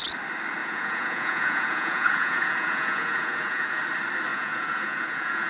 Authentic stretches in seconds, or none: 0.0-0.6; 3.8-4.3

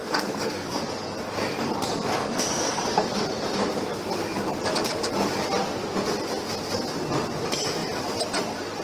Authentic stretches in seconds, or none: 0.8-2.2; 2.8-8.8

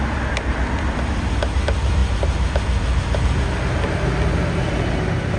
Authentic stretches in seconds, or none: 0.0-5.4

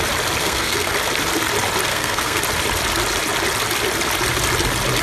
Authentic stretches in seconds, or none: 0.0-0.4; 0.9-1.9; 2.4-5.0

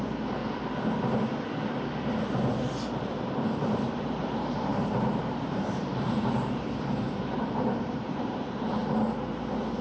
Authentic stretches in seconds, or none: 0.4-3.0; 8.8-9.8

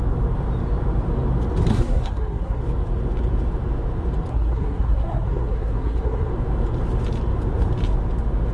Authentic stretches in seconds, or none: 0.0-1.7; 2.6-4.3; 6.3-8.5

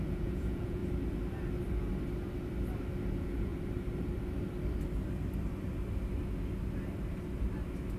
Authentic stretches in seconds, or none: 0.8-3.1; 3.5-8.0